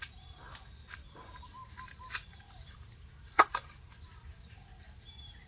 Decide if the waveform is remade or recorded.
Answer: remade